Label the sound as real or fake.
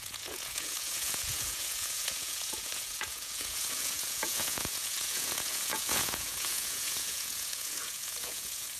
fake